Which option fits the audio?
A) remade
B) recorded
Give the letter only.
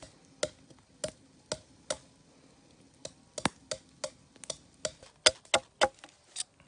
B